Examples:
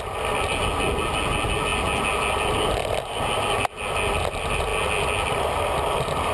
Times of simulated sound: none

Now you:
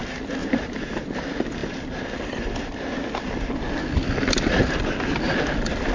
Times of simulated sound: 0.4-1.2 (vocoder, BigVGAN v2)

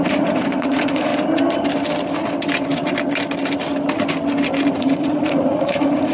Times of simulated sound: 0.0-1.1 (vocoder, Vocos); 4.8-6.1

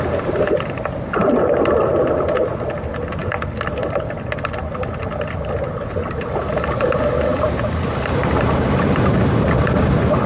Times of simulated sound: none

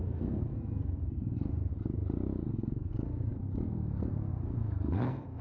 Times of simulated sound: 0.0-1.7 (codec, SNAC); 2.5-5.4

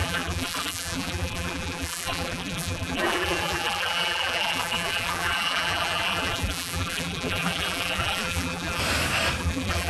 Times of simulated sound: 0.0-8.8 (vocoder, BigVGAN v2); 9.4-9.9